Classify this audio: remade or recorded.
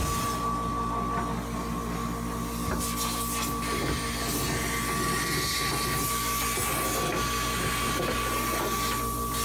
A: recorded